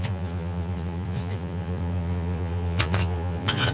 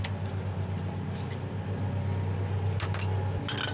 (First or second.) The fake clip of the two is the first